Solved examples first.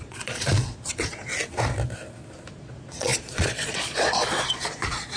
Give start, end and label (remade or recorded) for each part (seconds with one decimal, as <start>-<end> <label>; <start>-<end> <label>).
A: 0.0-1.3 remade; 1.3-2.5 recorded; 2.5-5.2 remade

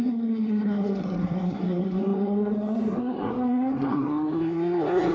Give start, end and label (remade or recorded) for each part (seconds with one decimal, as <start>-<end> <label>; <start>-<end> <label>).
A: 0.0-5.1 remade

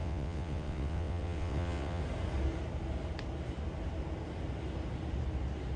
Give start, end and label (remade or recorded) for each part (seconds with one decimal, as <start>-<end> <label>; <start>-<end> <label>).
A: 0.0-2.0 remade; 2.0-5.8 recorded

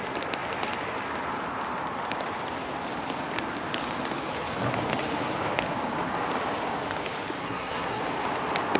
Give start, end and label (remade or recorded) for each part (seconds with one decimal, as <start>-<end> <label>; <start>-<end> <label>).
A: 0.0-7.4 recorded; 7.4-8.0 remade; 8.0-8.8 recorded